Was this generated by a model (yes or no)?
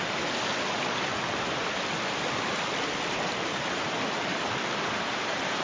no